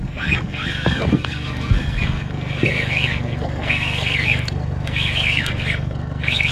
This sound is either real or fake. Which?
fake